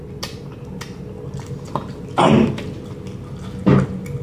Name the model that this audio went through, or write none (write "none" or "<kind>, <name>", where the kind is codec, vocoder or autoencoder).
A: none